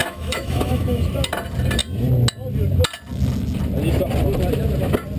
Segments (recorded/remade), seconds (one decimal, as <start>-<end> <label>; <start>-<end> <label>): 0.0-1.0 remade; 1.0-5.2 recorded

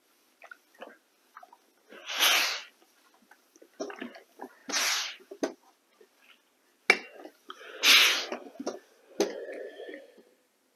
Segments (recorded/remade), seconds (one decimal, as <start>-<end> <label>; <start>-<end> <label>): 0.0-4.6 recorded; 4.6-5.4 remade; 5.4-10.8 recorded

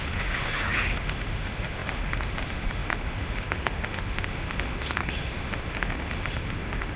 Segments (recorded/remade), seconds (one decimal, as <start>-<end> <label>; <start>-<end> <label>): 0.0-7.0 remade

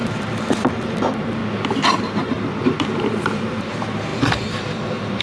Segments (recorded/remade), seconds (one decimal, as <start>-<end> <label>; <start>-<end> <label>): 0.0-1.4 remade; 1.4-2.0 recorded; 2.0-5.2 remade

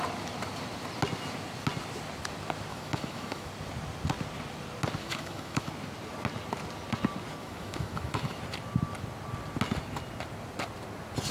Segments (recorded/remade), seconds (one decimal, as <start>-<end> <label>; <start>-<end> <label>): 0.0-2.7 recorded; 2.7-3.5 remade; 3.5-5.0 recorded; 5.0-5.7 remade; 5.7-7.4 recorded; 7.4-8.4 remade; 8.4-11.3 recorded

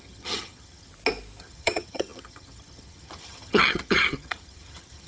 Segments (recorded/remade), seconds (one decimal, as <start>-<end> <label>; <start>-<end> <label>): 0.0-0.9 remade; 0.9-1.4 recorded; 1.4-5.1 remade